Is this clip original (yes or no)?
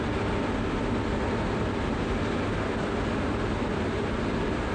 yes